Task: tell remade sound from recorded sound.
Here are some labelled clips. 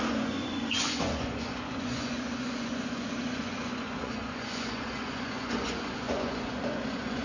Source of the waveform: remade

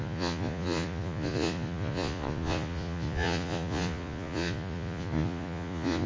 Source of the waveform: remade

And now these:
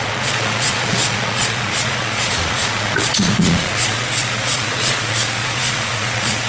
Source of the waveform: remade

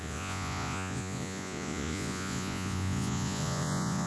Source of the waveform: remade